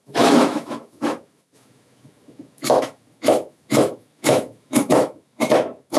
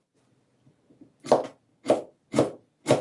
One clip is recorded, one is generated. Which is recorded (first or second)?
second